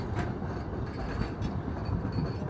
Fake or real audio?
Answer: real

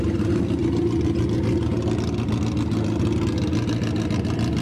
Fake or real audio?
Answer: real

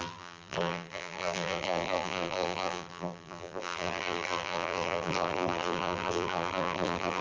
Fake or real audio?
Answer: fake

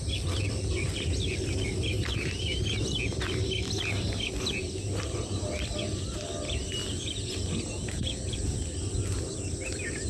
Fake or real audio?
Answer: real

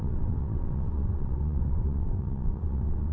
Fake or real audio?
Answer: fake